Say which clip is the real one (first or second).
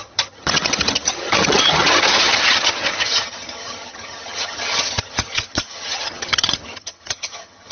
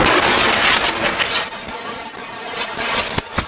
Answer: second